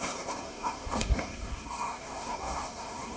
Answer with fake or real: fake